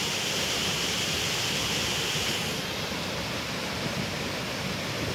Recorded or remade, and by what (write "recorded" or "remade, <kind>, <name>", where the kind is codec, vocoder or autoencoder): remade, vocoder, BigVGAN v2